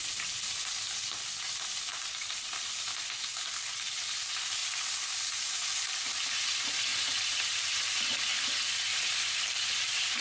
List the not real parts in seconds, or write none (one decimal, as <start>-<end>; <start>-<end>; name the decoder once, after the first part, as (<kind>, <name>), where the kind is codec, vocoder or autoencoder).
1.9-2.7 (vocoder, BigVGAN v2); 6.9-8.2; 8.9-10.2